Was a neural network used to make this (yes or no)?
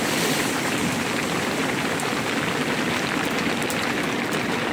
no